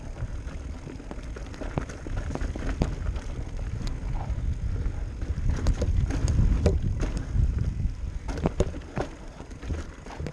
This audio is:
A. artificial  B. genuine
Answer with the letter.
B